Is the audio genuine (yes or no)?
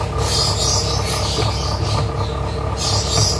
yes